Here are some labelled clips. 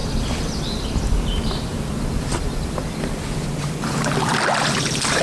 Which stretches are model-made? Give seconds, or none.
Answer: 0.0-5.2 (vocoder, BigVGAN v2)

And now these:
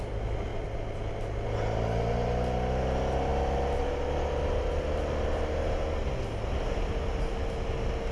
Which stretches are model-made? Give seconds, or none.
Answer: none

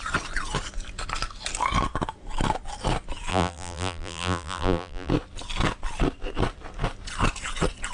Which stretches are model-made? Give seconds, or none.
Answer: 3.3-5.1 (vocoder, BigVGAN v2)

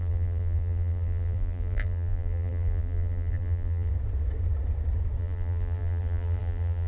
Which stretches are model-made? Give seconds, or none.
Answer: 0.0-3.9 (vocoder, BigVGAN v2); 5.2-6.9

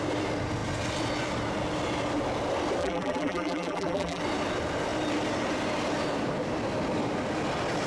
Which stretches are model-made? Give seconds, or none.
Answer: 2.8-4.2 (vocoder, BigVGAN v2)

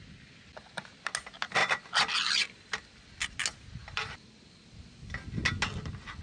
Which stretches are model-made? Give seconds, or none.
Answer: 3.8-4.4 (vocoder, BigVGAN v2)

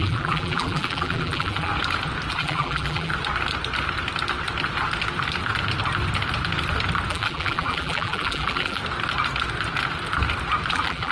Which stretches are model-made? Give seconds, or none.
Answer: 0.0-1.7 (vocoder, BigVGAN v2); 2.3-3.1; 7.1-8.8; 10.7-11.1

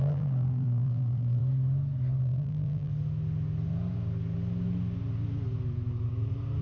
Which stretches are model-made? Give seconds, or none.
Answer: 0.0-1.4 (vocoder, BigVGAN v2); 2.2-2.9